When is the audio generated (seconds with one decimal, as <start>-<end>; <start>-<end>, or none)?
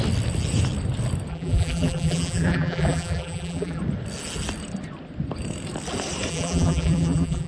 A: 1.3-3.8; 6.3-7.5